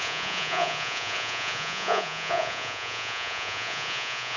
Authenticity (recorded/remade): remade